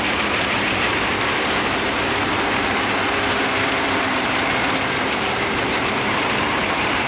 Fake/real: fake